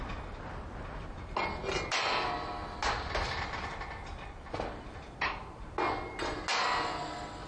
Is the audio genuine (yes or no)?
yes